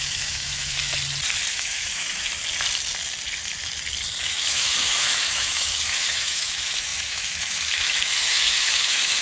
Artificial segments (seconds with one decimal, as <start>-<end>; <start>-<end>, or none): 0.0-0.9; 1.5-2.3; 4.2-9.2